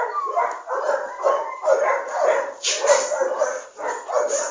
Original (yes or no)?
yes